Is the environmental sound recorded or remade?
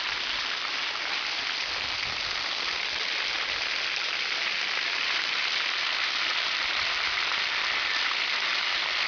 recorded